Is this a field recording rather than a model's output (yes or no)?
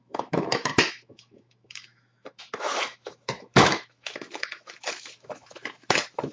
no